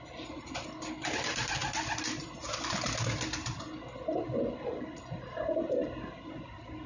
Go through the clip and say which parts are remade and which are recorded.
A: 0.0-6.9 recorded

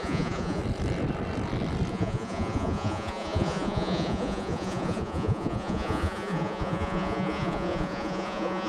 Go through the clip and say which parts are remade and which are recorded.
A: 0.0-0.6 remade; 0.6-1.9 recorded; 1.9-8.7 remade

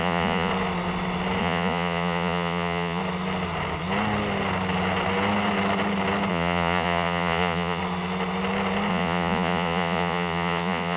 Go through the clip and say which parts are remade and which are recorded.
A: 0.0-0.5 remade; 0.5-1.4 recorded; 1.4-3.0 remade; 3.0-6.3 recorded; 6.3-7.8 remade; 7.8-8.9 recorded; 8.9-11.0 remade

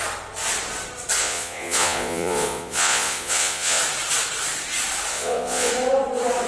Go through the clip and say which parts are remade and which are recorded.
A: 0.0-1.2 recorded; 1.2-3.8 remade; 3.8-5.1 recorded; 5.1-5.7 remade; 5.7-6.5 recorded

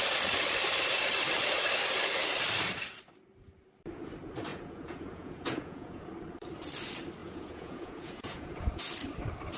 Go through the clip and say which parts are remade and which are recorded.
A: 0.0-4.5 recorded; 4.5-6.1 remade; 6.1-7.2 recorded; 7.2-8.8 remade; 8.8-9.6 recorded